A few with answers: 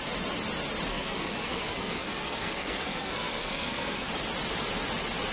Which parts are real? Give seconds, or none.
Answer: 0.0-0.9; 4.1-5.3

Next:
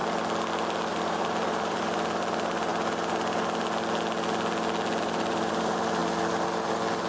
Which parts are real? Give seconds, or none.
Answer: 0.0-0.9; 2.7-5.0; 6.0-7.1

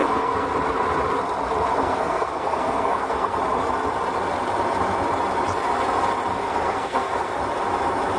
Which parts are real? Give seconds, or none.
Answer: 0.5-1.7; 3.4-6.3; 7.4-8.2